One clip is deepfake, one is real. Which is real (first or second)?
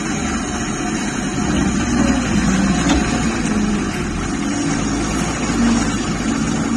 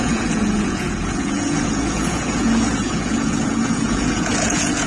first